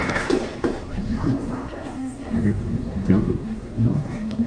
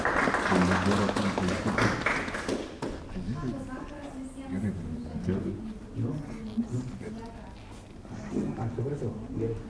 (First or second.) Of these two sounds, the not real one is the first